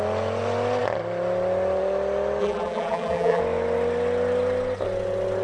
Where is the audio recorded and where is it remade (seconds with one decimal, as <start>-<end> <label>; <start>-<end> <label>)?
0.0-2.4 recorded; 2.4-3.4 remade; 3.4-5.4 recorded